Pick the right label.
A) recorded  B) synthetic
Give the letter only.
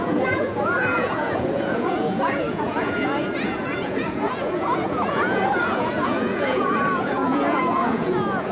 B